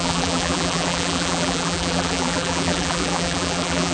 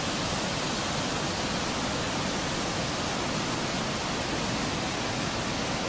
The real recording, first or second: second